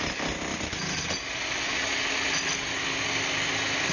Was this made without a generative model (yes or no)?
yes